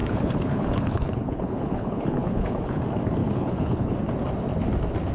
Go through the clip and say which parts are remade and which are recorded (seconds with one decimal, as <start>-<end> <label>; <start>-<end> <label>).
0.0-2.8 remade; 2.8-3.2 recorded; 3.2-3.9 remade; 3.9-5.1 recorded